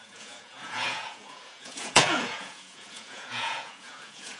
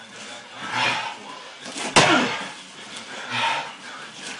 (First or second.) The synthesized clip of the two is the first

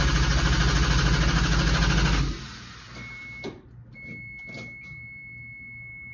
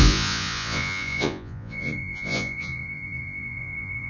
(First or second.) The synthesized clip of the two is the second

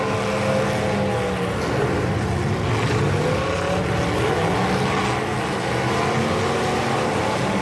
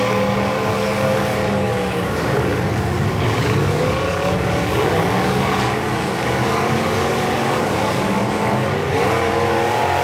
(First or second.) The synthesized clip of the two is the second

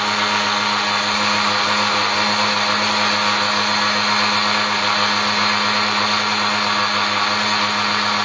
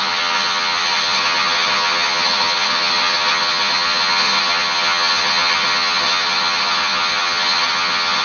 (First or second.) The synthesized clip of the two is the second